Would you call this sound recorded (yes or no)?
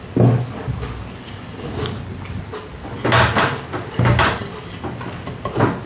yes